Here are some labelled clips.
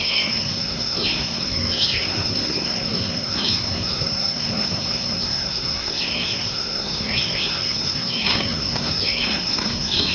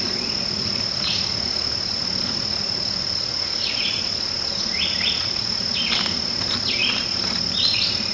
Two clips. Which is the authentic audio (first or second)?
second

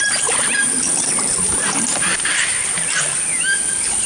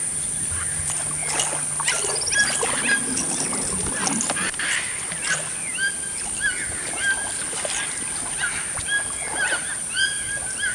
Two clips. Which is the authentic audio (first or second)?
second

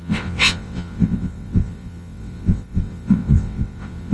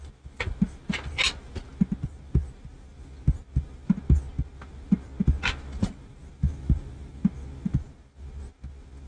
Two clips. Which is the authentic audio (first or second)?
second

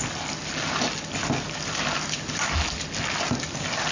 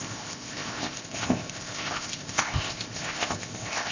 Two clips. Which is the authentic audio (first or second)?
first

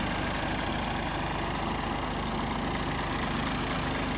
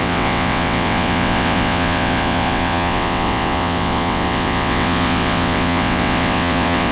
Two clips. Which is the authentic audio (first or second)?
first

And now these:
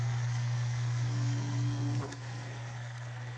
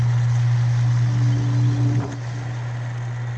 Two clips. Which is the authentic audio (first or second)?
second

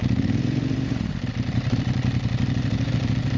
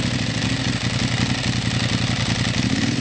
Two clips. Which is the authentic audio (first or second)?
second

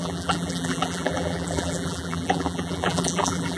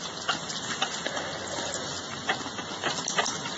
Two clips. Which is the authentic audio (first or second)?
second